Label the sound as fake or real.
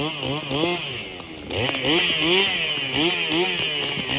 real